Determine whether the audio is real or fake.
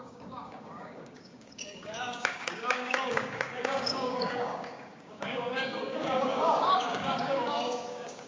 fake